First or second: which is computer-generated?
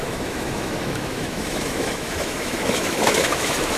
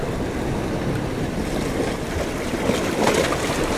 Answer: first